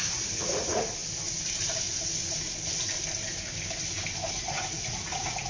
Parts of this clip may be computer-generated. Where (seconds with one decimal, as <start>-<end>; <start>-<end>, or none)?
0.0-1.0; 4.3-5.5